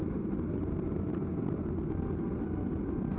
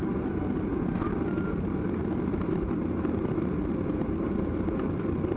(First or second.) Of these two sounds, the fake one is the second